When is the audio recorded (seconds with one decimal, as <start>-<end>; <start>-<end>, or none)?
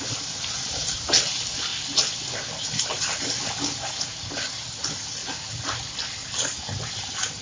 0.0-7.4